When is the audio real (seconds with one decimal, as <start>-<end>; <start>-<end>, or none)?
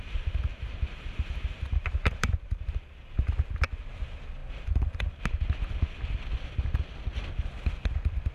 0.0-0.5; 3.0-8.3